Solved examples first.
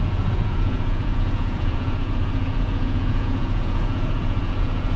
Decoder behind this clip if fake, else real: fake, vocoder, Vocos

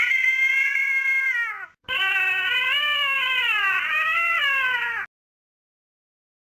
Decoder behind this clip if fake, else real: real